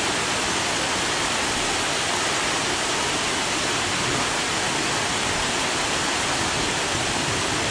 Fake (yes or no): no